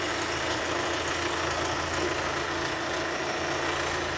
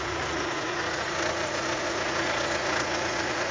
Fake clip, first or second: second